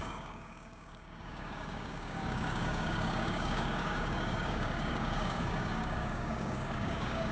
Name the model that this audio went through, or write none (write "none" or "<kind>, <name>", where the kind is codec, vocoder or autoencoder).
codec, DAC